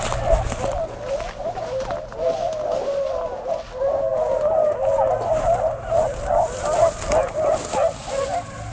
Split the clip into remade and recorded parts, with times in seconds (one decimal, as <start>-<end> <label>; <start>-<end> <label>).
0.0-8.7 recorded